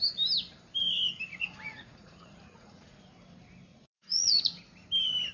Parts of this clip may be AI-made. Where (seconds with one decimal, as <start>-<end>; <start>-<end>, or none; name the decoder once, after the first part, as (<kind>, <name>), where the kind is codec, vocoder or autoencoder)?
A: 1.3-3.1 (vocoder, Vocos); 3.7-4.6